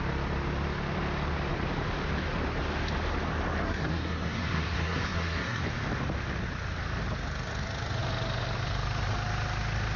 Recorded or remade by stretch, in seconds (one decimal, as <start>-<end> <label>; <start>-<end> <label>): 0.0-3.6 recorded; 3.6-5.6 remade; 5.6-10.0 recorded